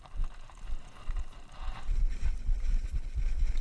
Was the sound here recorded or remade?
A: remade